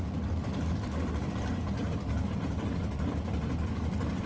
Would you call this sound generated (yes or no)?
yes